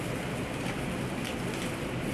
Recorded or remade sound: recorded